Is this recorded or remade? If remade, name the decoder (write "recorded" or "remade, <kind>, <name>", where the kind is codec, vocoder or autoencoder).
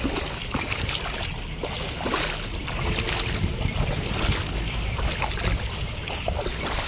recorded